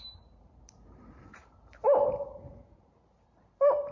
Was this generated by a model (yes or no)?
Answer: yes